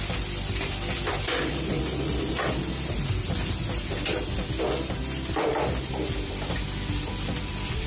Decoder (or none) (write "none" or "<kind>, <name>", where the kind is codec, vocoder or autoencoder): none